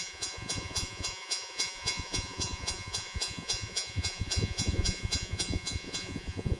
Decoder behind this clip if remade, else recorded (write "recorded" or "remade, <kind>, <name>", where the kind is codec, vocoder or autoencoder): remade, vocoder, Vocos